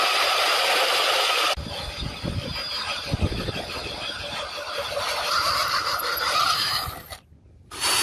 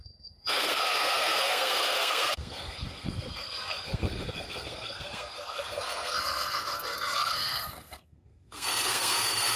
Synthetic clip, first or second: second